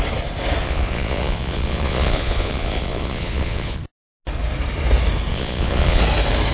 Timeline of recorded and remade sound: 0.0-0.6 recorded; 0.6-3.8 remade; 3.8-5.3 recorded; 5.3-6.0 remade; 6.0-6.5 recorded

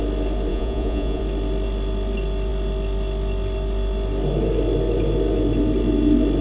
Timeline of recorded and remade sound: 0.0-0.5 recorded; 0.5-1.2 remade; 1.2-6.4 recorded

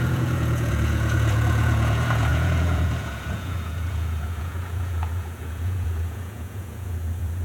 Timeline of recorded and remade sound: 0.0-7.4 remade

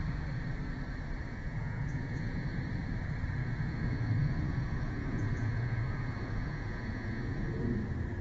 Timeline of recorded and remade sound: 0.0-1.3 recorded; 1.3-2.6 remade; 2.6-3.4 recorded; 3.4-7.6 remade; 7.6-8.2 recorded

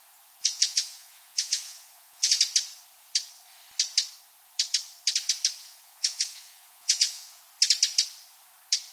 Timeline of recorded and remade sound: 0.0-0.4 recorded; 0.4-2.4 remade; 2.4-5.6 recorded; 5.6-7.4 remade; 7.4-8.9 recorded